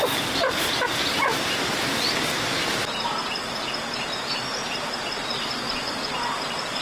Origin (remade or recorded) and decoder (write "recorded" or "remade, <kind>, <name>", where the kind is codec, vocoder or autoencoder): recorded